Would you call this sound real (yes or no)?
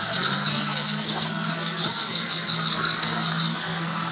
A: no